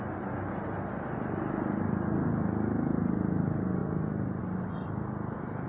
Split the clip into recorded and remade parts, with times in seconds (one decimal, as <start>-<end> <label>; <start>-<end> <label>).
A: 0.0-5.7 recorded